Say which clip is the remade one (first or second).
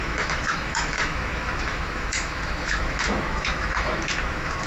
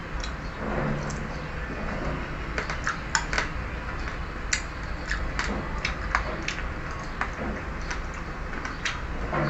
first